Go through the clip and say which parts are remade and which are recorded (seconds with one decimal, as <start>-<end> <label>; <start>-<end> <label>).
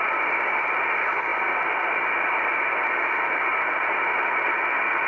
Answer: 0.0-5.1 recorded